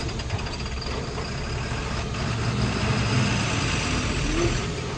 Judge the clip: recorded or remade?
recorded